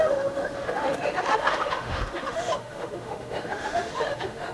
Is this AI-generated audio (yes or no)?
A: yes